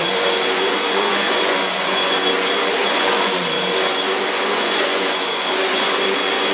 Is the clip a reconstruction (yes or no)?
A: yes